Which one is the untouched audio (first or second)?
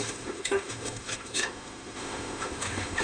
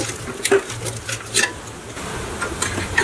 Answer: second